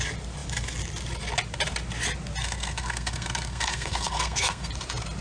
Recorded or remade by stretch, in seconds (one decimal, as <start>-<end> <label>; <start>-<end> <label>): 0.0-2.4 recorded; 2.4-4.7 remade; 4.7-5.2 recorded